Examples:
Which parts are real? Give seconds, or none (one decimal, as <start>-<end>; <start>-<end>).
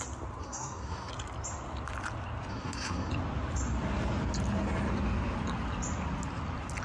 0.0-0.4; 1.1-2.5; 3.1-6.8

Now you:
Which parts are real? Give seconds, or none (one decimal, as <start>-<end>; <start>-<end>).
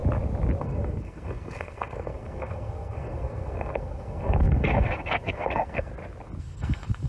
0.0-0.6; 5.9-6.4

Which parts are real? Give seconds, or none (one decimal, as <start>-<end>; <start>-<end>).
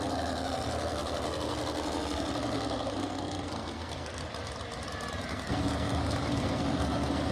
4.2-5.3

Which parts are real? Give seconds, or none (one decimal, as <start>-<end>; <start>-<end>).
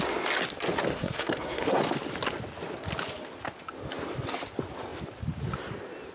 0.0-0.9; 1.8-6.1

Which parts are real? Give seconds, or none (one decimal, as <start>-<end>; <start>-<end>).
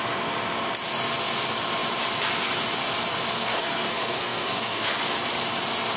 0.0-3.3; 4.9-6.0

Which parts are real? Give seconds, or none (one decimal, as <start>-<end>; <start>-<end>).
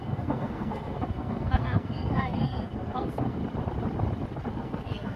3.4-4.5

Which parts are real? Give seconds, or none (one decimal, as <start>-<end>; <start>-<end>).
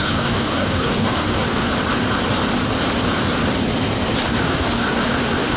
1.7-4.3